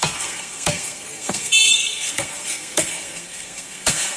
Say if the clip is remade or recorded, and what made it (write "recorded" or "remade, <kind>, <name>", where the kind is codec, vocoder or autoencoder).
remade, codec, SNAC